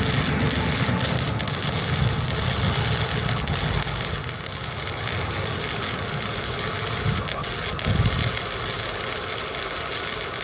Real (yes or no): yes